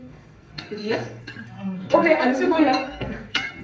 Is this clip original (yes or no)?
no